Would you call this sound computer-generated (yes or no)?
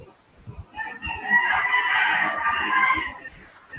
no